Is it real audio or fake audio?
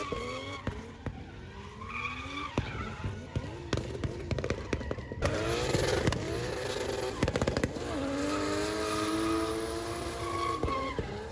real